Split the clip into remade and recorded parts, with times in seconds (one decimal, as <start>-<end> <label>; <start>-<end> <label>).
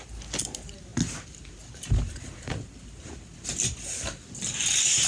0.0-5.1 recorded